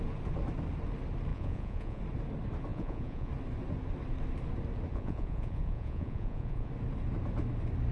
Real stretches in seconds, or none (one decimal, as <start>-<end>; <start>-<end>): 0.0-1.3; 2.0-2.7; 3.3-4.9; 6.7-7.9